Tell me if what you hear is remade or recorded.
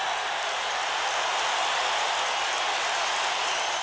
recorded